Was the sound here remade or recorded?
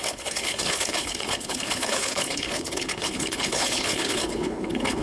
remade